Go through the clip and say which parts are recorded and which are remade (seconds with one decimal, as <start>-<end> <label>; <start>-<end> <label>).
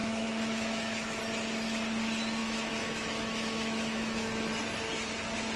0.0-1.2 remade; 1.2-2.4 recorded; 2.4-4.5 remade; 4.5-5.6 recorded